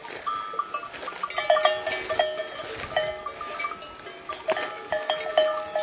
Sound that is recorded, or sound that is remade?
recorded